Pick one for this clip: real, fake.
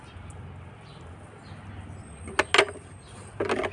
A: real